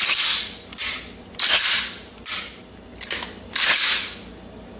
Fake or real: real